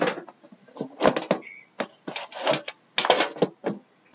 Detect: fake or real real